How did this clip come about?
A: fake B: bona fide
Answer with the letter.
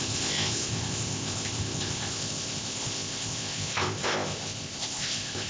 A